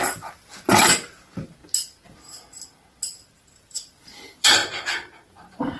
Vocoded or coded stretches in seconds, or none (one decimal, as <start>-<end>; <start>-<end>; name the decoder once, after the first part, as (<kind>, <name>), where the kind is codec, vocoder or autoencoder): 0.0-1.6 (vocoder, BigVGAN v2); 2.2-5.8